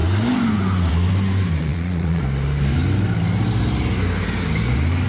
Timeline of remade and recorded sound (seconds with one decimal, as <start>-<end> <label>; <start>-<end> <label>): 0.0-1.6 recorded; 1.6-2.2 remade; 2.2-5.1 recorded